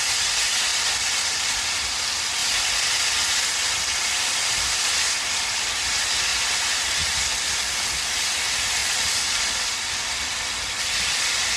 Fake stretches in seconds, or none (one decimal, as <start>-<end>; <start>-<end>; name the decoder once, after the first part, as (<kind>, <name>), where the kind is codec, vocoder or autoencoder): 6.3-7.2 (vocoder, BigVGAN v2); 8.8-9.4